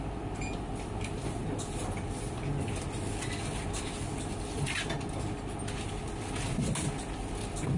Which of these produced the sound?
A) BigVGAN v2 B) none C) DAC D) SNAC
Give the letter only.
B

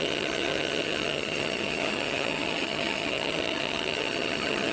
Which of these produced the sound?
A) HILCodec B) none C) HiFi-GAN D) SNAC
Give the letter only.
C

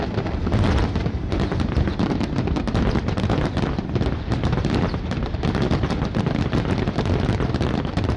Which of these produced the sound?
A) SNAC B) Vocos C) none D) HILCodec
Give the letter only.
C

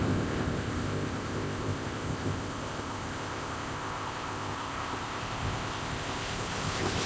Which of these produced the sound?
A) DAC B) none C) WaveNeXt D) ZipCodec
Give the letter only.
D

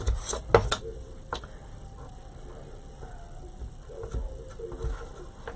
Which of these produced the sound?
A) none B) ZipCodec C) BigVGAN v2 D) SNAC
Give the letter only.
A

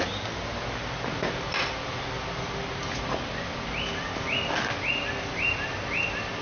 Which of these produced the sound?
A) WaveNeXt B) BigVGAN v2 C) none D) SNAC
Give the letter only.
C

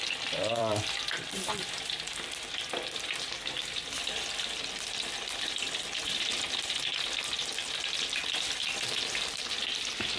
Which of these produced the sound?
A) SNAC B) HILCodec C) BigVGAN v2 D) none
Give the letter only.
C